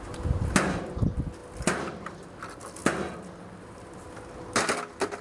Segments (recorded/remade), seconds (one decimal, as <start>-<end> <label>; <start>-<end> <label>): 0.0-5.2 recorded